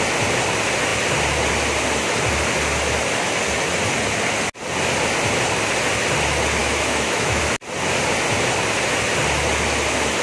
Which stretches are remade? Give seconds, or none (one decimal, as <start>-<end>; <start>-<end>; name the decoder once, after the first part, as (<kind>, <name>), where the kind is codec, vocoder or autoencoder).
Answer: 6.6-7.4 (autoencoder, DAC-VAE)